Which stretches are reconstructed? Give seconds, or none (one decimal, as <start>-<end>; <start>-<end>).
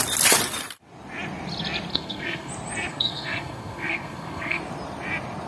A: 1.9-2.5; 2.9-4.6